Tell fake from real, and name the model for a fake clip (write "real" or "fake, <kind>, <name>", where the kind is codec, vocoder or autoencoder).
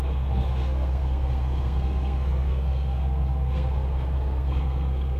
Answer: fake, codec, SNAC